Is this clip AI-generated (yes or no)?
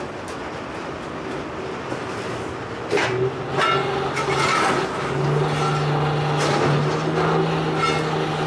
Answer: no